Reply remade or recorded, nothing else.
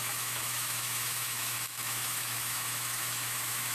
remade